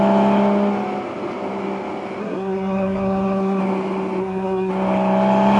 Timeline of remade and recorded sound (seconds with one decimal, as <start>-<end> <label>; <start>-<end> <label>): 0.0-2.2 recorded; 2.2-3.6 remade; 3.6-4.2 recorded; 4.2-4.7 remade; 4.7-5.6 recorded